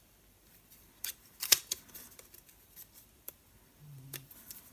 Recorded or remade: remade